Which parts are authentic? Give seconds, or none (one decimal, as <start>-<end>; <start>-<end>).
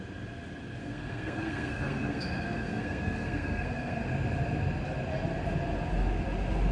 0.0-0.8; 4.0-6.7